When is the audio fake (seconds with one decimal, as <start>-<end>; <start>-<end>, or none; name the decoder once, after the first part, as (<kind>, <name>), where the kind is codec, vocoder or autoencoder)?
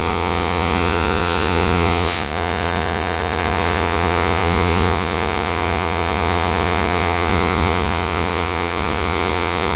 0.0-9.8 (vocoder, Vocos)